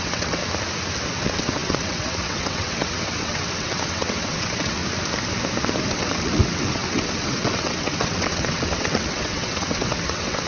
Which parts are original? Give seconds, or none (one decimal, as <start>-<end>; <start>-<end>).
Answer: 0.4-1.2; 4.8-5.9